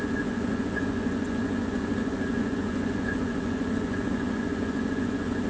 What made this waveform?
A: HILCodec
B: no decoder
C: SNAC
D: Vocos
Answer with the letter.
D